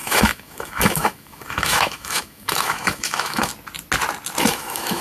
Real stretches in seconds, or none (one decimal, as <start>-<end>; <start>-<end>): 3.5-4.4